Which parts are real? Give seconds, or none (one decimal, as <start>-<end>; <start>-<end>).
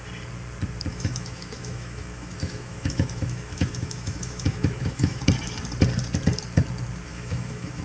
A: 0.0-0.9; 5.2-7.1